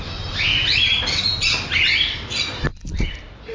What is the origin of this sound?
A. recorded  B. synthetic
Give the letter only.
A